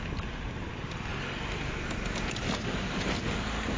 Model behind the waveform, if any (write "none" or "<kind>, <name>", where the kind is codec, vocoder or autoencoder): none